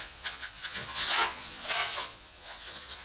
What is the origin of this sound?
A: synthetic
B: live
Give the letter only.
A